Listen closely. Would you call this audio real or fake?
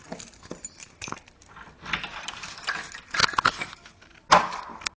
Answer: real